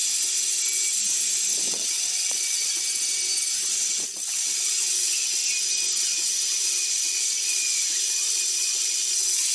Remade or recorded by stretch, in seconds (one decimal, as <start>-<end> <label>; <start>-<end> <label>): 0.0-1.7 recorded; 1.7-2.8 remade; 2.8-3.7 recorded; 3.7-5.4 remade; 5.4-6.0 recorded; 6.0-9.5 remade